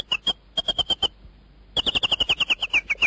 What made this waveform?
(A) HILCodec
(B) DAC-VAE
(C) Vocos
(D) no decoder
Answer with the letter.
D